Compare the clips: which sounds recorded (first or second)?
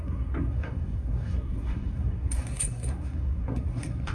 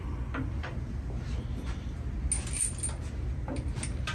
second